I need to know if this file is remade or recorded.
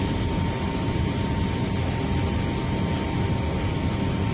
recorded